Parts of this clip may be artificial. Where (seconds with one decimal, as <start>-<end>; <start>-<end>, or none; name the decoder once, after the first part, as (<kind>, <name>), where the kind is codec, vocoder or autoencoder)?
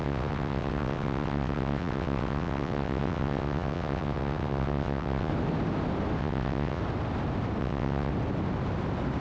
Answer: 0.0-5.3 (vocoder, WaveNeXt); 6.2-6.8; 7.6-8.1